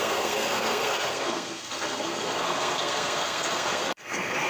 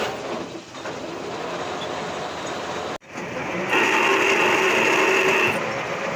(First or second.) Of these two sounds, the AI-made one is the first